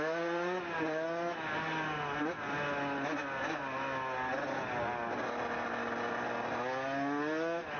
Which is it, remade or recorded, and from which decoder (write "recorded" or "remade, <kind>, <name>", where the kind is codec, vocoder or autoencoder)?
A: recorded